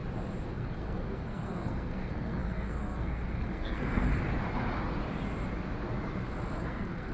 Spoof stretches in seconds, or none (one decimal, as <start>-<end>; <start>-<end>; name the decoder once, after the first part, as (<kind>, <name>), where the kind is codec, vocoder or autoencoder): 0.5-4.1 (codec, SNAC); 6.6-7.1